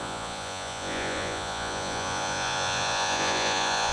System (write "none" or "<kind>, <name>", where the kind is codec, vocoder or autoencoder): vocoder, Vocos